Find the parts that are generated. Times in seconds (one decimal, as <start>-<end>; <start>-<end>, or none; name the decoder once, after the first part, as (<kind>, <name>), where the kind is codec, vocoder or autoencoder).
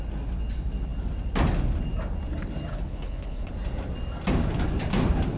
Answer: 2.7-3.5 (codec, HILCodec)